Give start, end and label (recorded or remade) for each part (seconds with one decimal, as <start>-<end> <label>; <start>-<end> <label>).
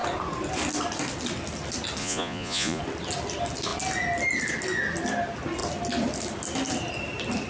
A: 0.0-2.0 recorded; 2.0-2.8 remade; 2.8-7.5 recorded